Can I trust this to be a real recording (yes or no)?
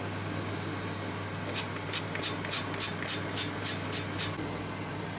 yes